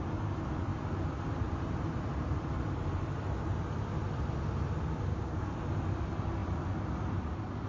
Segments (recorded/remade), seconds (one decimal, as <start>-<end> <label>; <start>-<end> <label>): 0.0-5.1 recorded; 5.1-5.6 remade; 5.6-7.7 recorded